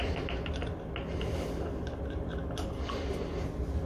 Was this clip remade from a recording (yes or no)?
no